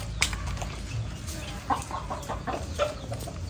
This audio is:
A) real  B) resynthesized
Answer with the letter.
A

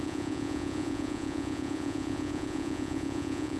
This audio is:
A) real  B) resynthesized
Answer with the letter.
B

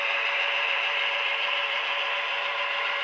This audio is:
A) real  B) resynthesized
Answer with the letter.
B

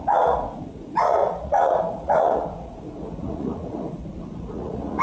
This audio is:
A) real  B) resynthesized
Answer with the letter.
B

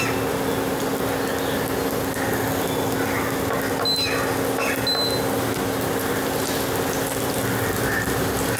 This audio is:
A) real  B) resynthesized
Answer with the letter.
A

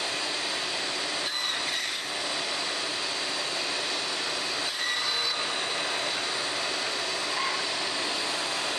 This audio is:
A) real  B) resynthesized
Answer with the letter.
A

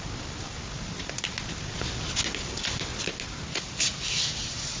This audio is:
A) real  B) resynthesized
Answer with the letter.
A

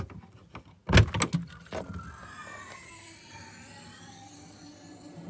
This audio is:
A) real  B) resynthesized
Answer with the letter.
A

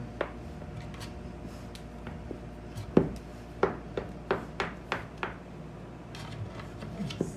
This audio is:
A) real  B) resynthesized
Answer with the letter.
A